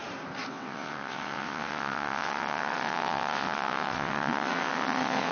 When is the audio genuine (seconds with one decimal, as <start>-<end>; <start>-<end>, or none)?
0.0-0.5